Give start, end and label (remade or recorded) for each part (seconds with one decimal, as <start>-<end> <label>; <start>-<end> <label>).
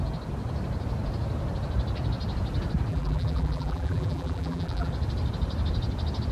0.0-2.9 recorded; 2.9-4.9 remade; 4.9-6.3 recorded